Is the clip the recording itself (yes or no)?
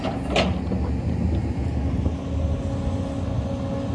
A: yes